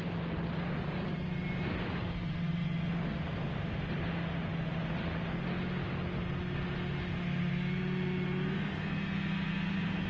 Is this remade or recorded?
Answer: recorded